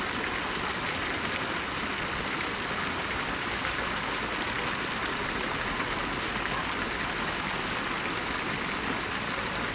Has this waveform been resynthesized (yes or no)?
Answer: no